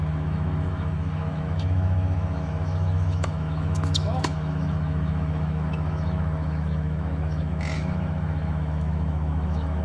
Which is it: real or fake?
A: fake